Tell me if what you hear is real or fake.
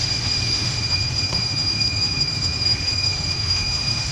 fake